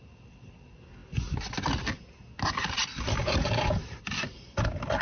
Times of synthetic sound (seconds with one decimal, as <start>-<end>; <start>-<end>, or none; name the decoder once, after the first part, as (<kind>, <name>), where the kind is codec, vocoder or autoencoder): none